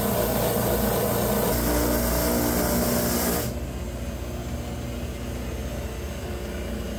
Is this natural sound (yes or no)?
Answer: yes